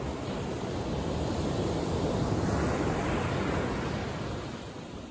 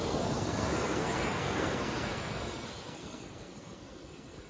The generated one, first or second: second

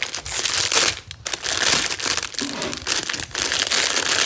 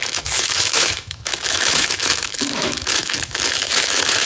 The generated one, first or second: second